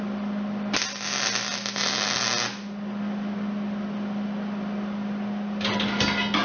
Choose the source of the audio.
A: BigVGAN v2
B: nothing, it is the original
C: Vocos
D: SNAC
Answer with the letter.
B